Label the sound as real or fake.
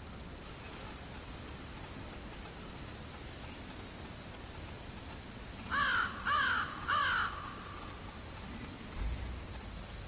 real